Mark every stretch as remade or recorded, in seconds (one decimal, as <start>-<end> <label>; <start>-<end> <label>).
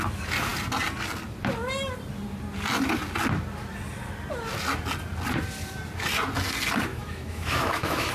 0.0-6.9 recorded; 6.9-8.1 remade